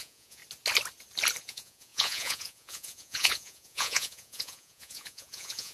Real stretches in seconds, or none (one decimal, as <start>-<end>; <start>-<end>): 0.4-1.4